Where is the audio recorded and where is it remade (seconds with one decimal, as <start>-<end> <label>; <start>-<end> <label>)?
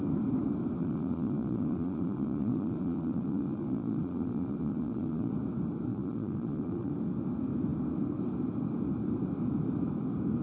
0.0-0.8 recorded; 0.8-5.3 remade; 5.3-5.9 recorded; 5.9-6.9 remade; 6.9-10.4 recorded